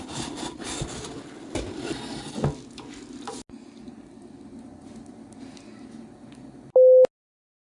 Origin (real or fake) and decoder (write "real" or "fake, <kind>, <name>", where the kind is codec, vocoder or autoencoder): real